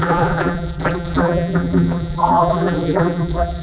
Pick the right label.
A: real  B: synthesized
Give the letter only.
B